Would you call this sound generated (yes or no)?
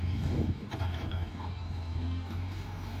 yes